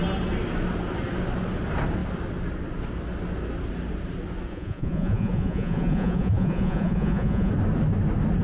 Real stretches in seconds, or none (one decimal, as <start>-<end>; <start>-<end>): 0.0-4.5; 7.5-8.4